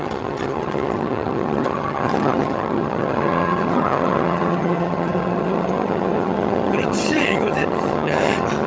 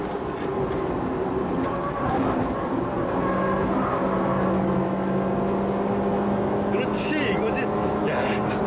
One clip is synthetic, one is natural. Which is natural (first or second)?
second